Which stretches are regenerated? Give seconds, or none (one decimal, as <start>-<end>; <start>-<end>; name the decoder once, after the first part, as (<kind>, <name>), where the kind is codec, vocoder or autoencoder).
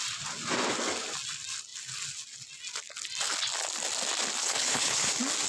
4.4-5.1 (codec, HILCodec)